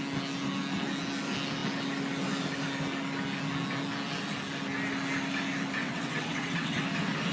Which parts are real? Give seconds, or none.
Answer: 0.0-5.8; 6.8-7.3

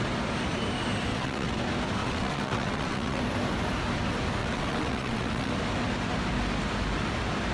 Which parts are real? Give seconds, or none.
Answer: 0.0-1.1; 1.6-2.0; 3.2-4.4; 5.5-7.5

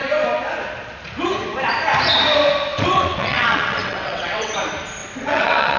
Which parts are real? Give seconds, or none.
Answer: 0.0-2.7; 4.5-5.0

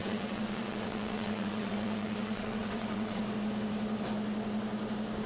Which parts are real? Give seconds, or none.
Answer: 3.2-5.3